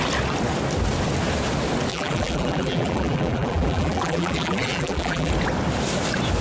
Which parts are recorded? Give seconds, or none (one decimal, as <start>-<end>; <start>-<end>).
0.0-1.9; 5.3-6.4